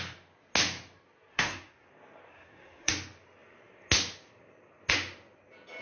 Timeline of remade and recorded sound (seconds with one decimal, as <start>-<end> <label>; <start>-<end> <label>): 0.0-1.3 recorded; 1.3-1.9 remade; 1.9-2.3 recorded; 2.3-2.9 remade; 2.9-5.8 recorded